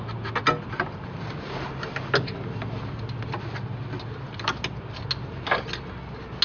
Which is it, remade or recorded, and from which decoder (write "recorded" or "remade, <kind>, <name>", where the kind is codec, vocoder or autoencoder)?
recorded